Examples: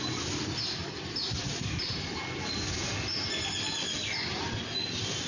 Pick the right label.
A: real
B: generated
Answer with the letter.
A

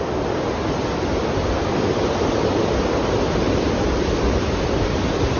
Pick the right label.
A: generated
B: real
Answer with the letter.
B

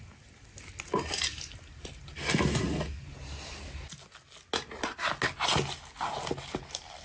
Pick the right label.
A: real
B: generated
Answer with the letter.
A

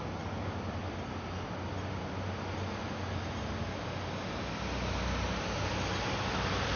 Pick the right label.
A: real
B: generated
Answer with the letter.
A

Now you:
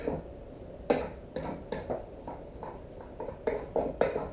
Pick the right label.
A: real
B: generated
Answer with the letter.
A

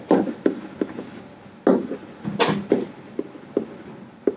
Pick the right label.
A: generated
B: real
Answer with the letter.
B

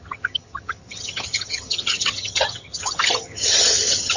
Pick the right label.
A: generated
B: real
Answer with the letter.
A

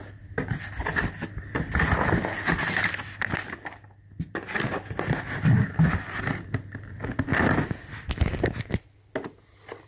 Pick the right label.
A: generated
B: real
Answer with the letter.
B